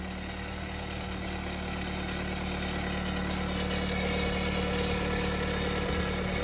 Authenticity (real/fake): real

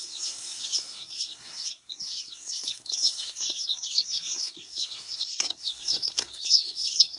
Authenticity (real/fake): fake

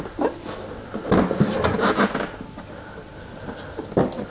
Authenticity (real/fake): real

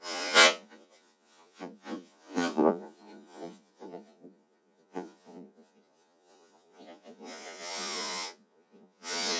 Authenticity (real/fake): fake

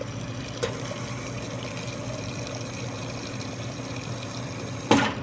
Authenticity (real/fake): real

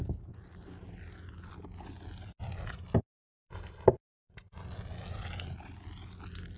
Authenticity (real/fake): real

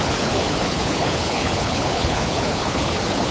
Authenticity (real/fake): fake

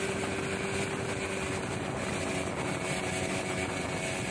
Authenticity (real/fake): real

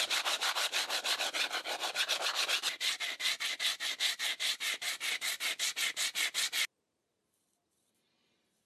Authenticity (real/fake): real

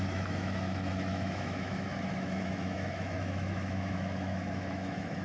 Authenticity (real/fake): fake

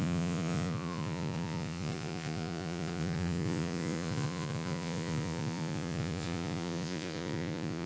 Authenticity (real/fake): fake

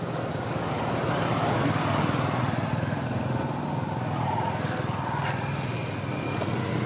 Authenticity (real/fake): real